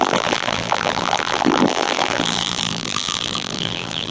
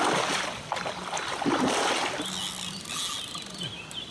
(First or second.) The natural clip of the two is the second